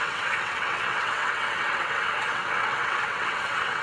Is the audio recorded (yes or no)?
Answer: no